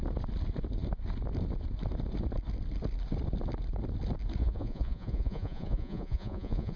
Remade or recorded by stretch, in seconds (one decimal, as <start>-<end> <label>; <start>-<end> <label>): 0.0-4.4 recorded; 4.4-6.8 remade